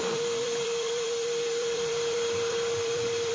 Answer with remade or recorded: remade